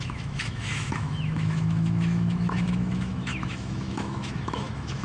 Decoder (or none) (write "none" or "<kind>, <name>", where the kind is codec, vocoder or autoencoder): autoencoder, DAC-VAE